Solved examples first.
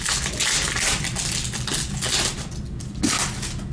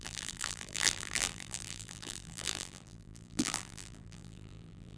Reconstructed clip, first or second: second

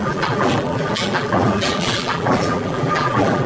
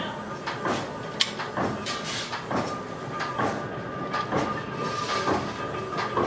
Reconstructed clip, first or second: first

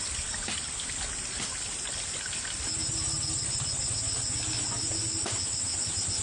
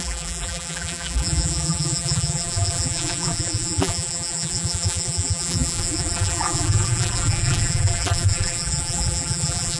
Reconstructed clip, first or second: second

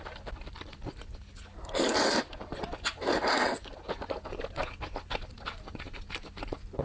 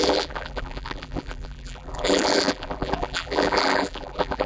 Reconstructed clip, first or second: second